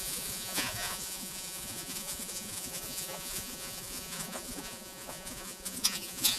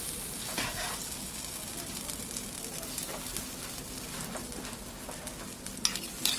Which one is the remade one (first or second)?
first